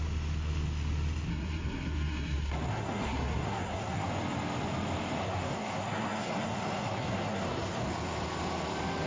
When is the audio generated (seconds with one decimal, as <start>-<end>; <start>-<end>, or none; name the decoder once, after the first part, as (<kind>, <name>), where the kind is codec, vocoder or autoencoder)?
1.3-4.1 (codec, SNAC); 5.2-7.9